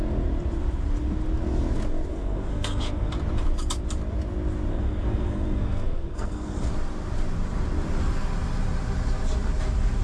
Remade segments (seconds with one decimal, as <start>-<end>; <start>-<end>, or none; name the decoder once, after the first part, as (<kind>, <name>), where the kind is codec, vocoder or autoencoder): 2.1-3.1 (codec, SNAC); 4.7-6.7